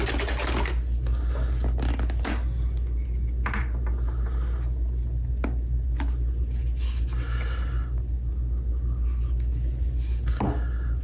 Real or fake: real